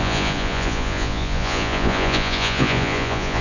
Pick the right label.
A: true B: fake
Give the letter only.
B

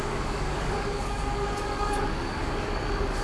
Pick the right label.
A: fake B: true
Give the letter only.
A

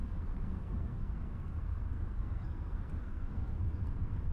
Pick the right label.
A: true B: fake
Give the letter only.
B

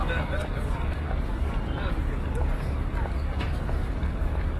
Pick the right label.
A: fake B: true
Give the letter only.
A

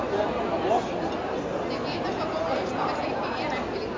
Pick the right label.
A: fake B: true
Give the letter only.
B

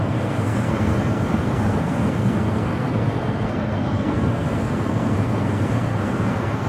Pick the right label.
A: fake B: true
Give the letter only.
A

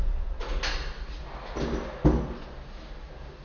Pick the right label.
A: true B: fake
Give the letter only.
A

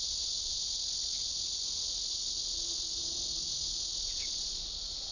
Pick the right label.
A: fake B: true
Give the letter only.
B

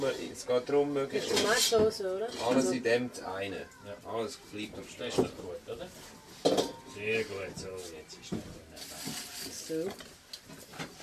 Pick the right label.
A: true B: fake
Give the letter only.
A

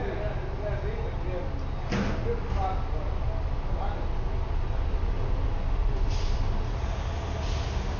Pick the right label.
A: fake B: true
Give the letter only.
B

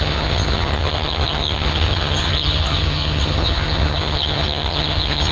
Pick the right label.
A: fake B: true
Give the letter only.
A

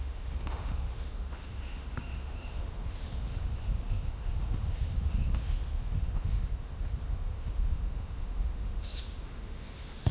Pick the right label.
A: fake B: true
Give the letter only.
A